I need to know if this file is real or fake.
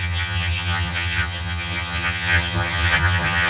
fake